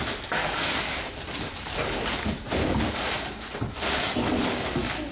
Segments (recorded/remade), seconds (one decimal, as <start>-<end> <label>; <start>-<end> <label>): 0.0-0.4 recorded; 0.4-3.5 remade; 3.5-4.2 recorded; 4.2-5.1 remade